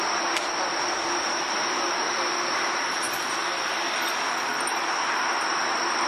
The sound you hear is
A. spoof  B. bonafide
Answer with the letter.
B